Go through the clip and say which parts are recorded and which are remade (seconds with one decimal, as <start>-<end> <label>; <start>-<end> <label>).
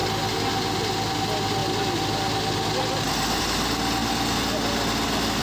0.0-5.4 recorded